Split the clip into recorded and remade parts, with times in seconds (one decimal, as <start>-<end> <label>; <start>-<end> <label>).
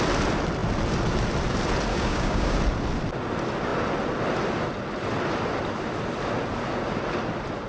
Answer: 0.0-1.9 recorded; 1.9-2.6 remade; 2.6-7.7 recorded